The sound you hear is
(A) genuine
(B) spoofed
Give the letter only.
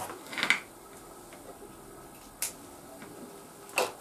A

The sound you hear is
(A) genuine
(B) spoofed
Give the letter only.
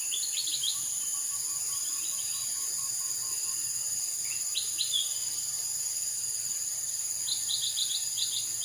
A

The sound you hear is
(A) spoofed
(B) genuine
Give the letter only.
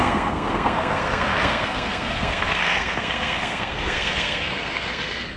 A